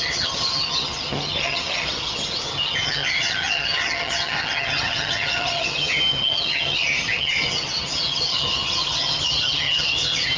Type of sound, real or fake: fake